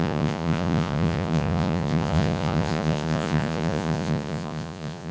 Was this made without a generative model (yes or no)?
no